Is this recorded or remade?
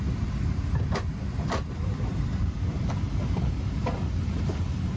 remade